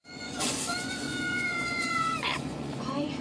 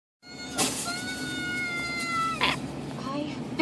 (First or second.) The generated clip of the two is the first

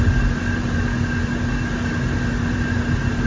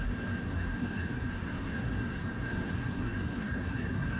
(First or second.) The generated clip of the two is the second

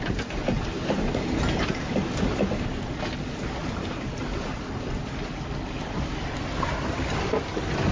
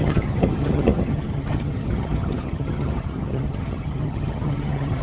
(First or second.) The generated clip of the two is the second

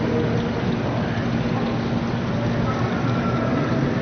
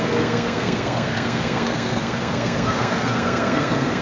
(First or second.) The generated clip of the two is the second